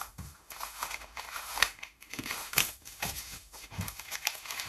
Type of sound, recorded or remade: remade